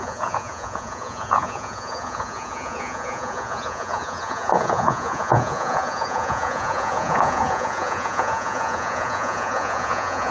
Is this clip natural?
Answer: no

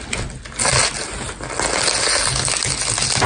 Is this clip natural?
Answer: yes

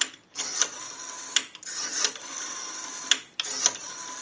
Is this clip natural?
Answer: yes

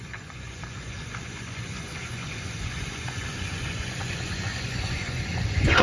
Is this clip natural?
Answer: no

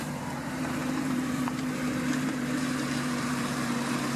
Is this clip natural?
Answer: no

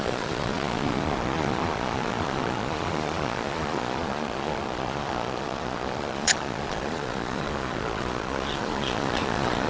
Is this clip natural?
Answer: no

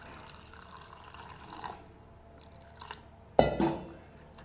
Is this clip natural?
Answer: yes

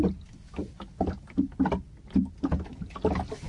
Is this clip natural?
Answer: yes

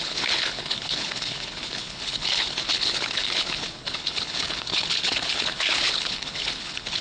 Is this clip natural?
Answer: no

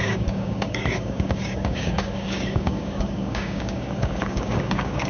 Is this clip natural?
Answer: no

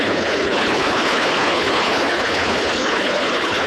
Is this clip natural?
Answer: no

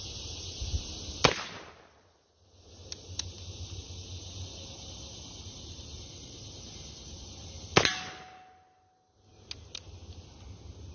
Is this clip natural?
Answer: yes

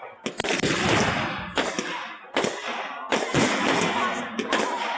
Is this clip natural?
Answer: yes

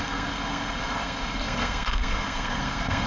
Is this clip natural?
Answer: no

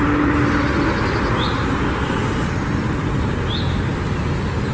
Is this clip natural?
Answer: yes